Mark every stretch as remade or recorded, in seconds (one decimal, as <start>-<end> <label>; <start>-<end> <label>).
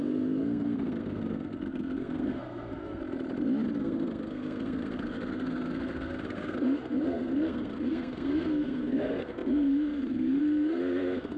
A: 0.0-3.0 remade; 3.0-3.8 recorded; 3.8-11.4 remade